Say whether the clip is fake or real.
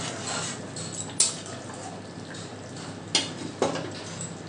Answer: real